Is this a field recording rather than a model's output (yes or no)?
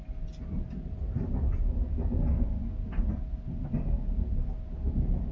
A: yes